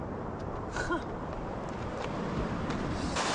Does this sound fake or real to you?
fake